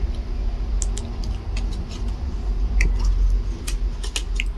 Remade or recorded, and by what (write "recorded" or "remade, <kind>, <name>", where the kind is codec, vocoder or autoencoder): recorded